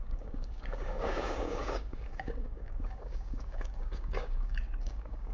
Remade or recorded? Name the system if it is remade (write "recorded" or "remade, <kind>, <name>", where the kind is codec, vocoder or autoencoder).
remade, codec, DAC